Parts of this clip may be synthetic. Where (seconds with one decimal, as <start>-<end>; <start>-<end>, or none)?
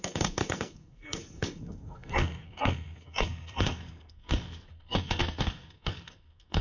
0.0-6.6